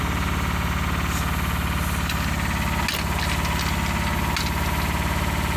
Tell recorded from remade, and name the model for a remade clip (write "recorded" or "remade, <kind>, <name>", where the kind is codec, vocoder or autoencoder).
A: recorded